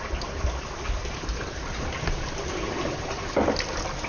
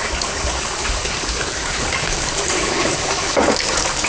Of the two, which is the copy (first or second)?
second